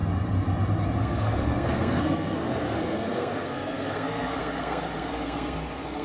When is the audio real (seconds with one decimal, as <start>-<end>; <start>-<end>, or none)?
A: 0.0-1.0